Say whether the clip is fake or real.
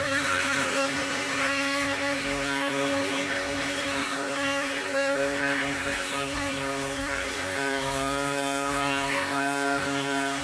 fake